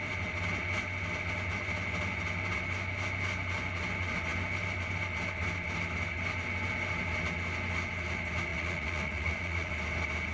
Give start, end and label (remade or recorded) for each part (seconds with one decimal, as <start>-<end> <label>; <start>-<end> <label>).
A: 0.0-8.5 recorded; 8.5-9.7 remade; 9.7-10.3 recorded